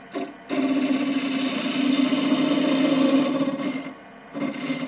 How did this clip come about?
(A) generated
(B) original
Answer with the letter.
B